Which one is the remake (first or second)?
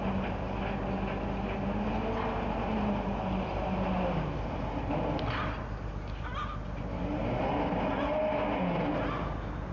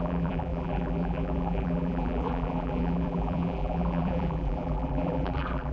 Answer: second